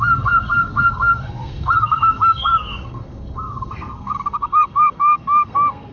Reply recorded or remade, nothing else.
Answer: remade